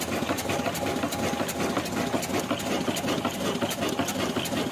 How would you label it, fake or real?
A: real